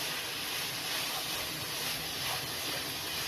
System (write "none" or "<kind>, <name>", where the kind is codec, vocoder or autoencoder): none